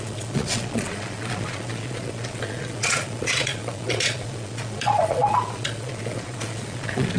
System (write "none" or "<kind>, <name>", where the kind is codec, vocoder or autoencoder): vocoder, Vocos